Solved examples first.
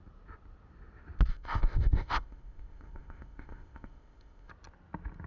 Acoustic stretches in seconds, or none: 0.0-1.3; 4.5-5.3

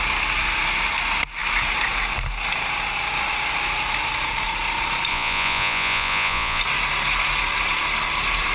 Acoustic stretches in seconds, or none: 0.0-5.1; 6.6-8.5

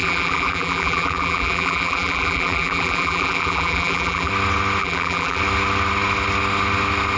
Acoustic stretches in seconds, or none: 4.3-4.8; 5.4-7.2

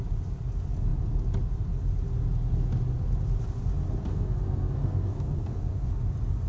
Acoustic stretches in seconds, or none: 0.0-4.1; 5.9-6.5